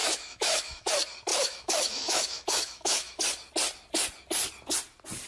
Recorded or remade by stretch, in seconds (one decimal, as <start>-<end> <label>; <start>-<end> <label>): 0.0-0.9 remade; 0.9-1.3 recorded; 1.3-3.2 remade; 3.2-5.3 recorded

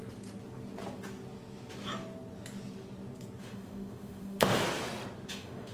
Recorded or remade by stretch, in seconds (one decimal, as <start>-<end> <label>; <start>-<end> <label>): 0.0-3.4 recorded; 3.4-4.6 remade; 4.6-5.3 recorded; 5.3-5.7 remade